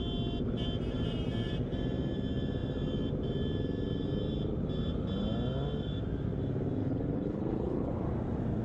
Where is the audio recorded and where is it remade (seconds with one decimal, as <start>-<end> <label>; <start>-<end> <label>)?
0.0-6.8 recorded; 6.8-7.9 remade; 7.9-8.6 recorded